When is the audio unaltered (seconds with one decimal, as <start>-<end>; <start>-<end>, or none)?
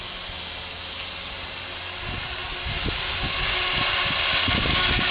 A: 0.0-5.1